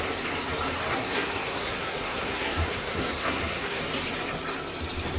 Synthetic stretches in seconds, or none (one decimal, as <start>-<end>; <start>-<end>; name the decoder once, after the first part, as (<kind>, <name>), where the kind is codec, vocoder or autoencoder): 0.9-3.8 (codec, SNAC)